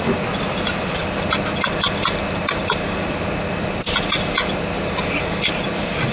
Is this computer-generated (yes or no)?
no